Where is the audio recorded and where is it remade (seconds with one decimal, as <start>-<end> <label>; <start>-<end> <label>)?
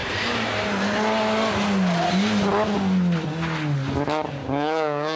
0.0-4.4 recorded; 4.4-5.2 remade